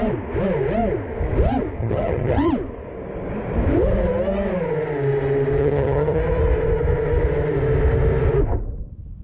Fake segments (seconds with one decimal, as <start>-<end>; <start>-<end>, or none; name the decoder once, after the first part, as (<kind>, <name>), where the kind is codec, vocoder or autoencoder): 1.8-2.5 (vocoder, HiFi-GAN); 5.6-6.2